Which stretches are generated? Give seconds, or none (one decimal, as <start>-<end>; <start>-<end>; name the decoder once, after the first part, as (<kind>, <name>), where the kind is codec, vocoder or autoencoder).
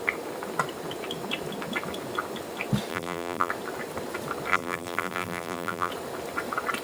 2.9-3.5 (vocoder, BigVGAN v2); 4.5-5.9